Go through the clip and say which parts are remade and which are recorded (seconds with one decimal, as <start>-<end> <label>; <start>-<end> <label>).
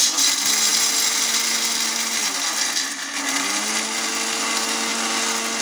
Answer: 0.0-5.6 recorded